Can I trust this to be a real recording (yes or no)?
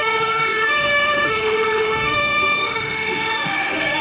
no